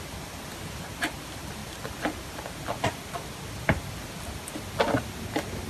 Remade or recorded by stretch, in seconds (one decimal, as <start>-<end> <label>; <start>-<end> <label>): 0.0-5.7 recorded